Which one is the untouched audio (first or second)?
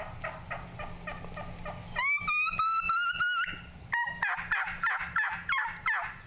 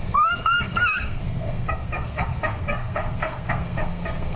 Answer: first